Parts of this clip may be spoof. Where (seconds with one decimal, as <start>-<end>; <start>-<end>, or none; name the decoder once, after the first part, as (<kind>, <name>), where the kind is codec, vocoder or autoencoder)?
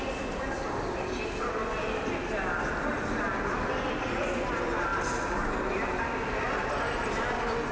none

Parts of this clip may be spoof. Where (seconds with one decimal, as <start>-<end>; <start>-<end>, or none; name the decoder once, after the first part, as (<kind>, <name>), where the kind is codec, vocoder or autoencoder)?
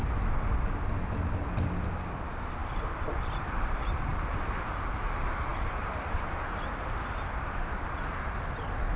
2.6-3.5 (vocoder, BigVGAN v2); 4.1-5.0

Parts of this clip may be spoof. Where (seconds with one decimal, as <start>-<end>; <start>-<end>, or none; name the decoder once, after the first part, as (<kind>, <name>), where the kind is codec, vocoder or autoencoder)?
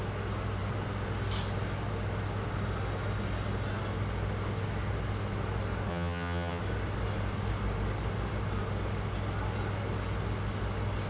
5.9-6.6 (vocoder, HiFi-GAN)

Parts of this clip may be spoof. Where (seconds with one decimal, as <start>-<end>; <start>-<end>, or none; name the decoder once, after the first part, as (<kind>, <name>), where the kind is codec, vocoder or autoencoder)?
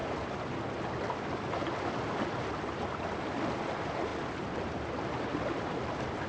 none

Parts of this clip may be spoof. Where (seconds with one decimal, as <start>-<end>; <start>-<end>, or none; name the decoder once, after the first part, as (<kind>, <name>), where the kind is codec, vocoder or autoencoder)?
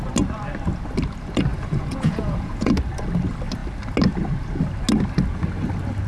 1.5-2.7 (vocoder, Vocos)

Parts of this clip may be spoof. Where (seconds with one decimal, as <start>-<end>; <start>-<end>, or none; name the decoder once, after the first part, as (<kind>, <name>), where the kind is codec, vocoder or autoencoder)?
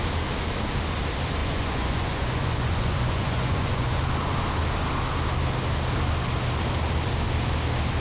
1.4-4.0 (vocoder, Vocos)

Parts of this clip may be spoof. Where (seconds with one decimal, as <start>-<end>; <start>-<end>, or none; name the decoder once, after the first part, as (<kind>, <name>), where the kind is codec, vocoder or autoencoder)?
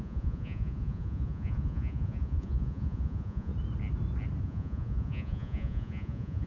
0.0-3.5 (vocoder, Vocos); 4.4-6.5